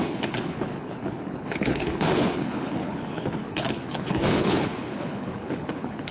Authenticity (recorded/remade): remade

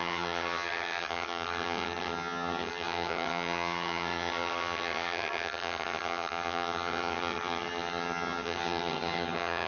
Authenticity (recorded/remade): remade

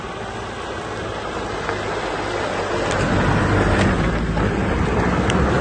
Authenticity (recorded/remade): recorded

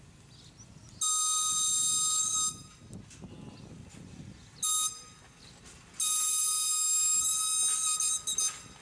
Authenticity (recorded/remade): recorded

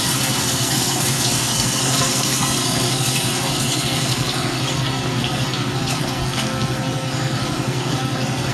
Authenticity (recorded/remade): remade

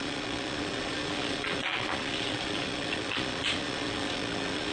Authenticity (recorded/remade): remade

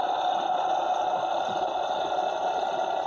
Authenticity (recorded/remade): recorded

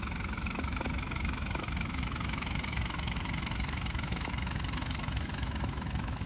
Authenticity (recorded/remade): remade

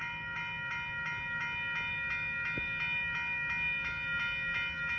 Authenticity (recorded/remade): recorded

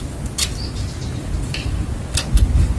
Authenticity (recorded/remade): recorded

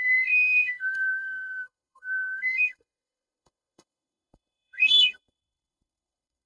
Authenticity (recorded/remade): remade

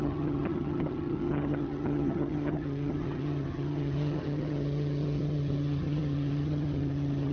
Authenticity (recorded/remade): remade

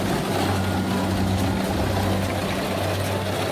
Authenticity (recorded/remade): recorded